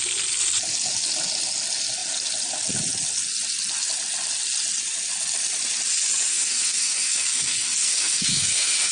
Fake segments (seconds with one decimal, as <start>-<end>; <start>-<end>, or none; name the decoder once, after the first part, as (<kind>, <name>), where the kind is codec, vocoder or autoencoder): 6.3-8.9 (codec, SNAC)